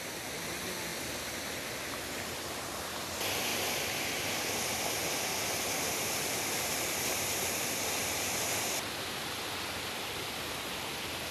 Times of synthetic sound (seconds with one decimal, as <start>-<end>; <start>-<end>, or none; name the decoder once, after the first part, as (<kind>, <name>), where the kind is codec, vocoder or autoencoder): 0.9-2.4 (vocoder, BigVGAN v2); 3.5-6.8; 8.0-9.4